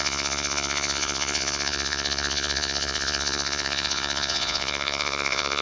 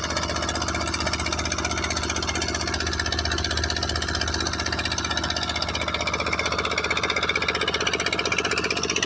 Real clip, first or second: second